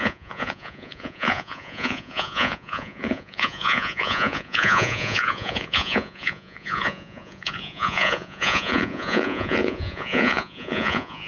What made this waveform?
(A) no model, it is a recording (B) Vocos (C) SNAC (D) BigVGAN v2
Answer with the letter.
B